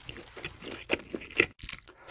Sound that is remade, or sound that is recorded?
recorded